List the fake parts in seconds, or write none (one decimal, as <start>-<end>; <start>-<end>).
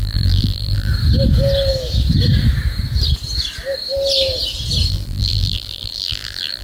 0.0-0.9; 4.9-6.6